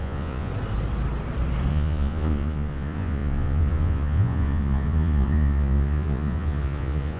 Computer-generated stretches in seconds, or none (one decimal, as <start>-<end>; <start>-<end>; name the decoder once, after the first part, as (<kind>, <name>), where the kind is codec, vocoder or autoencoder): 0.0-0.5 (vocoder, Vocos); 1.7-7.2